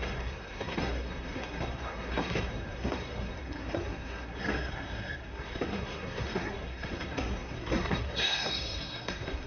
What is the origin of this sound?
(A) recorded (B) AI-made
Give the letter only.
B